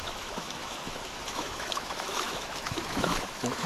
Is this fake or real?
fake